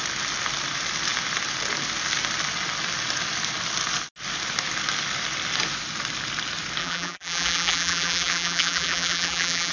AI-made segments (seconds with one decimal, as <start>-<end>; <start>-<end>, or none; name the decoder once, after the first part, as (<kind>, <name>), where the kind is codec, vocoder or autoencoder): 6.8-9.7 (vocoder, BigVGAN v2)